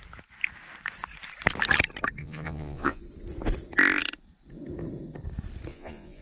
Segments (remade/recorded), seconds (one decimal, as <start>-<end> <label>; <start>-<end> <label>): 0.0-2.2 recorded; 2.2-3.0 remade; 3.0-5.7 recorded; 5.7-6.2 remade